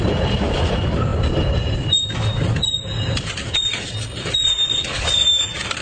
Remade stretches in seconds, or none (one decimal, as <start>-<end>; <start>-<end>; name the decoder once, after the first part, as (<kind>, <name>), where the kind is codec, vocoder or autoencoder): none